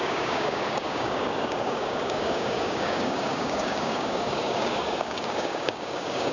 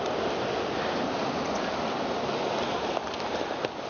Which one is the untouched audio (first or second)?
second